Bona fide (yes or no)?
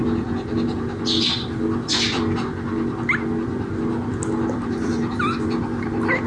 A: no